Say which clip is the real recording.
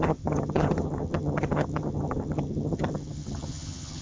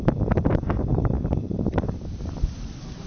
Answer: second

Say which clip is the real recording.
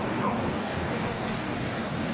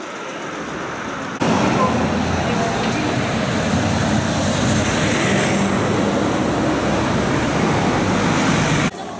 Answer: second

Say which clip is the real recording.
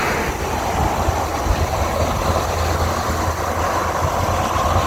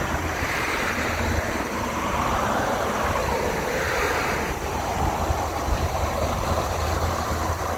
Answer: first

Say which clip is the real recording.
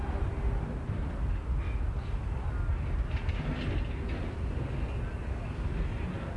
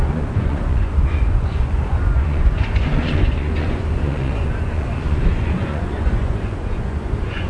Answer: first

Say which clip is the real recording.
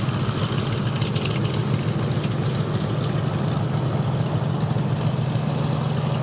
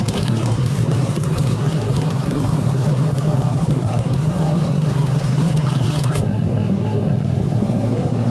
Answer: first